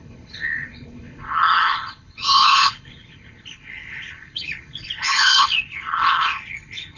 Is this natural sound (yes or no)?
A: no